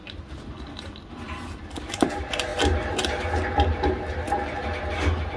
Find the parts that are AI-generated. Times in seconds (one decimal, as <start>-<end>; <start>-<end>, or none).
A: none